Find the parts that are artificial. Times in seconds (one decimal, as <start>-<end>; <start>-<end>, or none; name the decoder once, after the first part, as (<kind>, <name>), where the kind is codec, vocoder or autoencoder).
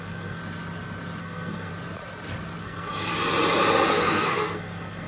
0.0-0.4 (codec, SNAC); 1.2-1.7; 2.6-3.1; 3.9-5.1